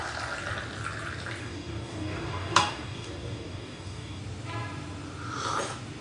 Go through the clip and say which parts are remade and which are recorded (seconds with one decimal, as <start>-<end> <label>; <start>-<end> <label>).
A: 0.0-1.4 recorded; 1.4-4.2 remade; 4.2-6.0 recorded